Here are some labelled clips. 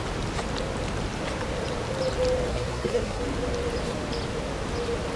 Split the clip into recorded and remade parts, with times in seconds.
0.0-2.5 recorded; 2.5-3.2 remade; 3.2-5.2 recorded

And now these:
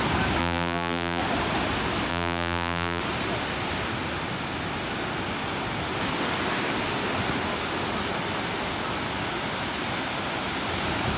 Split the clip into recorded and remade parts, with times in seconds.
0.0-0.4 recorded; 0.4-1.2 remade; 1.2-2.1 recorded; 2.1-3.0 remade; 3.0-11.2 recorded

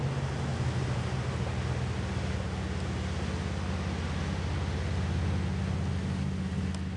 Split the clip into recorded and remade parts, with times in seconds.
0.0-7.0 recorded

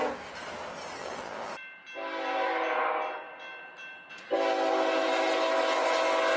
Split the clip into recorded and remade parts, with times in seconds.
0.0-1.0 recorded; 1.0-1.5 remade; 1.5-6.4 recorded